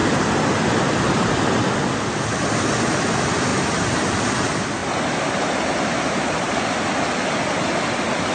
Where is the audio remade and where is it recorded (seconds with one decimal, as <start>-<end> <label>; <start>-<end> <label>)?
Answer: 0.0-3.5 recorded; 3.5-4.1 remade; 4.1-4.8 recorded; 4.8-6.6 remade; 6.6-8.3 recorded